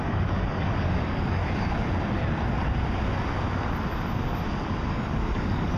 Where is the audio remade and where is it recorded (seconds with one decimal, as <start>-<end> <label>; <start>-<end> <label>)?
0.0-1.4 remade; 1.4-4.9 recorded; 4.9-5.8 remade